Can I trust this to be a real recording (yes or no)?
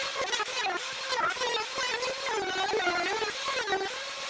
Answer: yes